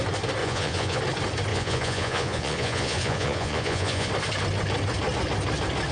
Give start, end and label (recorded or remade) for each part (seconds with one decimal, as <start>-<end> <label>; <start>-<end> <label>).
0.0-0.4 recorded; 0.4-1.0 remade; 1.0-1.5 recorded; 1.5-4.1 remade; 4.1-5.9 recorded